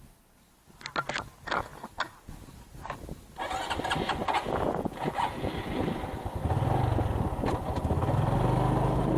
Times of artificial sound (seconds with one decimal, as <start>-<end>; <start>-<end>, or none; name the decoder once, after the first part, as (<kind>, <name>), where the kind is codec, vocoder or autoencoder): 4.2-5.7 (vocoder, Vocos)